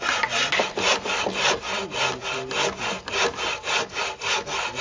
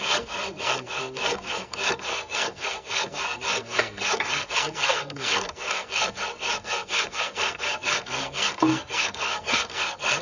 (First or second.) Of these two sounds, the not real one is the second